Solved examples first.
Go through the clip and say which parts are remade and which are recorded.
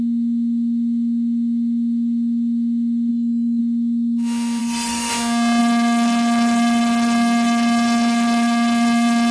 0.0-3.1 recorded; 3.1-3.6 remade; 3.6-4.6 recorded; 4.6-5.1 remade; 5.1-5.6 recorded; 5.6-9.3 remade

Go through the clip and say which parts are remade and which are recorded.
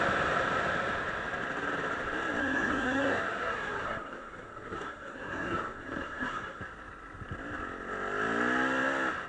0.0-2.4 recorded; 2.4-6.6 remade; 6.6-9.3 recorded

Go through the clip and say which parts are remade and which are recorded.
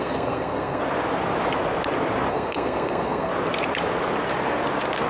0.0-0.8 remade; 0.8-2.3 recorded; 2.3-3.3 remade; 3.3-5.1 recorded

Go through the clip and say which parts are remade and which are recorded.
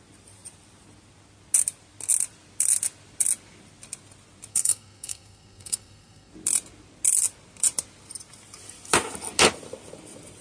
0.0-4.5 recorded; 4.5-6.3 remade; 6.3-10.4 recorded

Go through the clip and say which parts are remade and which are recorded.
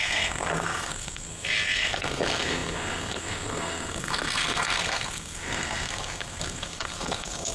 0.0-7.5 remade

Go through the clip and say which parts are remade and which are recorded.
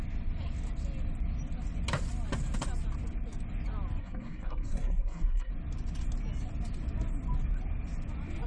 0.0-4.0 recorded; 4.0-5.5 remade; 5.5-8.5 recorded